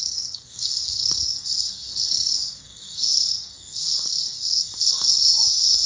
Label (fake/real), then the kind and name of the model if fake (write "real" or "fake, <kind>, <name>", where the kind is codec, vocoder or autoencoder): fake, codec, SNAC